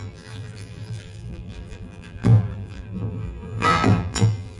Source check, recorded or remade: remade